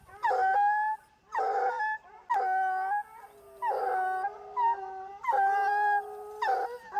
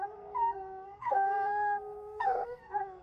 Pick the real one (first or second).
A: first